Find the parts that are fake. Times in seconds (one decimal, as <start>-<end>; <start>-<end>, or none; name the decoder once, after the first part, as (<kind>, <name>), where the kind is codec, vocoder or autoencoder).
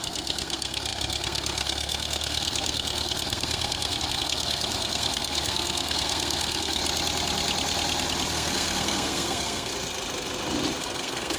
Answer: 0.0-6.8 (codec, SNAC); 8.3-9.7; 10.8-11.4